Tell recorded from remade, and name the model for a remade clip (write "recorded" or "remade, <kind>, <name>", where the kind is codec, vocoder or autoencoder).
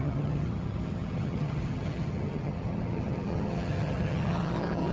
remade, vocoder, HiFi-GAN